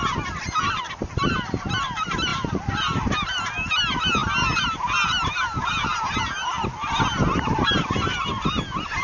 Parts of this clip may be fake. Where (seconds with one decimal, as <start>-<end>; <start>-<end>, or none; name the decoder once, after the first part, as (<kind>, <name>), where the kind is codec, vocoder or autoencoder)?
0.0-0.8 (vocoder, BigVGAN v2); 2.3-3.1